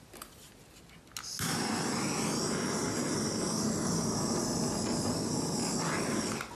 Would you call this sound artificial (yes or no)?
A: no